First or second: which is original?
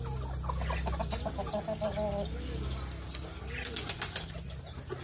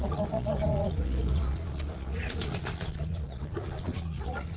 first